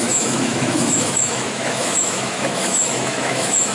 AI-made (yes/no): yes